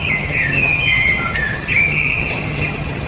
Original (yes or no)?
no